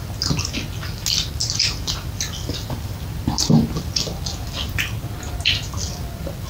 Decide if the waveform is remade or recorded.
recorded